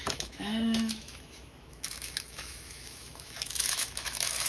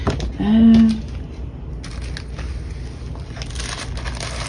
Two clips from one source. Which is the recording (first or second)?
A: second